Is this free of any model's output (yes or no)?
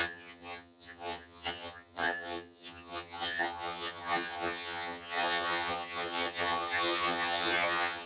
no